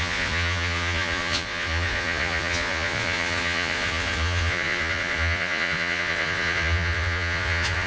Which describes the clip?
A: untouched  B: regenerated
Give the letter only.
B